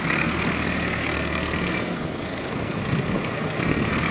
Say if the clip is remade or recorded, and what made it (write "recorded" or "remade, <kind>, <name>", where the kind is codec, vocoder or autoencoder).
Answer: remade, codec, SNAC